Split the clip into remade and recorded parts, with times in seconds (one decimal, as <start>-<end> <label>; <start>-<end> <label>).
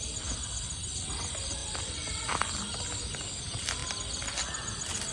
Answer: 0.0-5.1 recorded